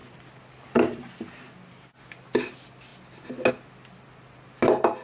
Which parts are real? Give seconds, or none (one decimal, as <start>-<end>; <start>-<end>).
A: 0.0-5.0